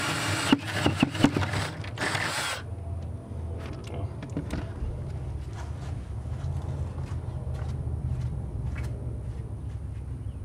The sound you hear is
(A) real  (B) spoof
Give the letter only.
A